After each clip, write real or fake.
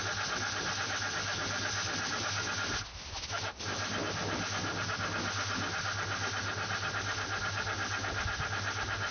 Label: real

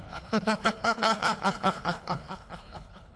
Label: fake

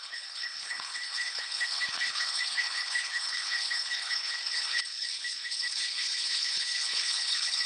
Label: fake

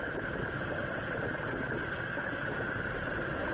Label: real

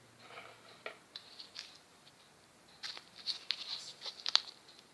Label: real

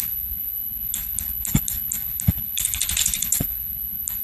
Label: fake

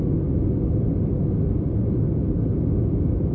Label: real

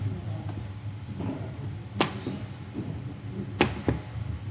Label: real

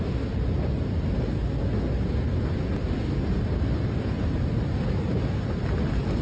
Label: real